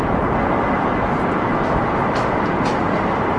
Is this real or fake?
real